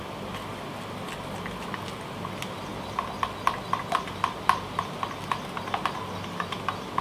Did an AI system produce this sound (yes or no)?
no